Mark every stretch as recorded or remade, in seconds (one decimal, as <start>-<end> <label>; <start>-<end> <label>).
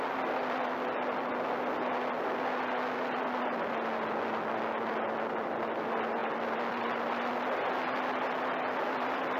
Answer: 0.0-9.4 recorded